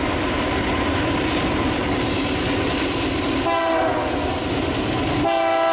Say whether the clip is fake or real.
real